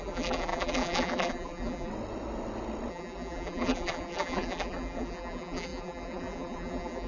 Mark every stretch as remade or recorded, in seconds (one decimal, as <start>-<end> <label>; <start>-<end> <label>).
0.0-1.9 remade; 1.9-2.9 recorded; 2.9-7.1 remade